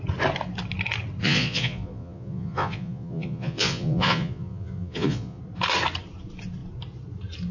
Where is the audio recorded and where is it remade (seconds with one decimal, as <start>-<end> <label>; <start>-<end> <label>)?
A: 0.0-1.2 recorded; 1.2-5.4 remade; 5.4-7.5 recorded

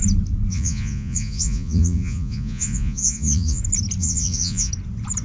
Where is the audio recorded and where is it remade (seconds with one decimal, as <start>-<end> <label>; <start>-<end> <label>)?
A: 0.0-0.5 recorded; 0.5-3.6 remade; 3.6-4.0 recorded; 4.0-4.7 remade; 4.7-5.2 recorded

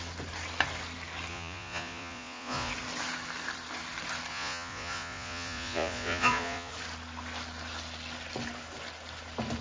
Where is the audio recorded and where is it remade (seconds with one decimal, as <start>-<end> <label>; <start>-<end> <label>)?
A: 0.0-1.3 recorded; 1.3-2.7 remade; 2.7-4.3 recorded; 4.3-6.7 remade; 6.7-9.6 recorded